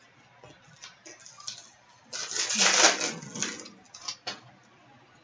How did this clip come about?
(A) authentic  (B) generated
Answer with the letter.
A